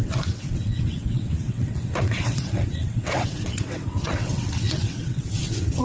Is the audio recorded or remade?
remade